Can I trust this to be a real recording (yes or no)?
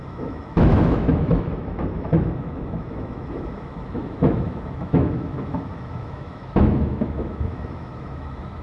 no